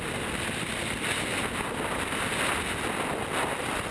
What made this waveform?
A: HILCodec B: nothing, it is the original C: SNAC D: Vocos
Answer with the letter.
B